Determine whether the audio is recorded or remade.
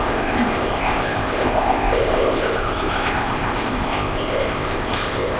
remade